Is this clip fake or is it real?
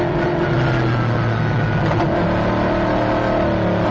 real